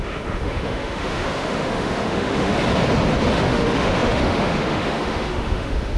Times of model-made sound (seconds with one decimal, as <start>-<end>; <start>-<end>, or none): 0.0-2.5; 3.3-6.0